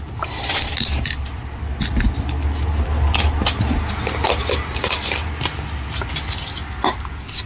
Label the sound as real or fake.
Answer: real